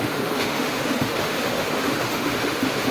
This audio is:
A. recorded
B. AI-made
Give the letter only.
B